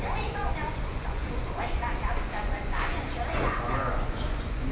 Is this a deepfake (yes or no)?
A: yes